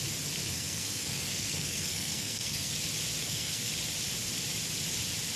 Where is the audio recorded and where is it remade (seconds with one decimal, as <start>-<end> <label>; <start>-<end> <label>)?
0.0-0.4 recorded; 0.4-2.7 remade; 2.7-3.2 recorded; 3.2-3.7 remade; 3.7-5.4 recorded